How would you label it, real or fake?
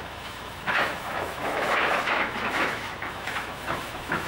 fake